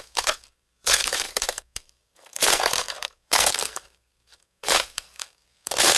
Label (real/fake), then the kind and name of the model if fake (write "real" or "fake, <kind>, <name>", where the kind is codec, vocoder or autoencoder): fake, codec, SNAC